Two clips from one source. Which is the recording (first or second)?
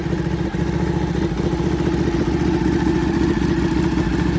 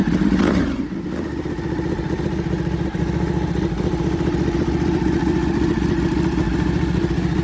first